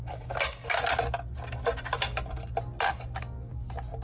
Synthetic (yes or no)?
no